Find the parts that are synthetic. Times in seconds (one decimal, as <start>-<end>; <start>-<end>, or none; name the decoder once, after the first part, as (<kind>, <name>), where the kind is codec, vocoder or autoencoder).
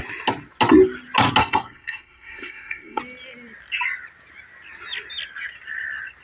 1.4-3.0 (codec, SNAC)